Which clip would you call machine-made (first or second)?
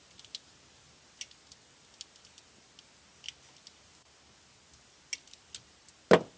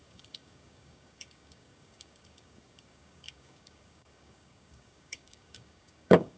second